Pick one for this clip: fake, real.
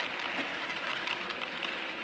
real